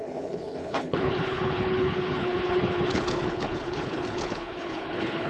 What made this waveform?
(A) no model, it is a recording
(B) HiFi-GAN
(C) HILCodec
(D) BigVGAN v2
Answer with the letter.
C